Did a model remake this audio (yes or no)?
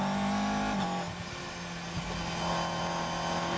no